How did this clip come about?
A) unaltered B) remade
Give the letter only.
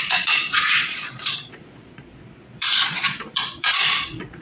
B